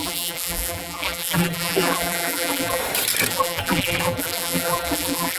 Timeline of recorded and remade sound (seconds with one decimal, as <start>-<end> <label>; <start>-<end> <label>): 0.0-2.8 remade; 2.8-3.3 recorded; 3.3-5.4 remade